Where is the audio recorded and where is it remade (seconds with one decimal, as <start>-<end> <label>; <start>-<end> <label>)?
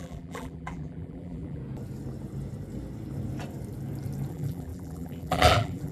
0.0-1.6 remade; 1.6-4.3 recorded; 4.3-5.9 remade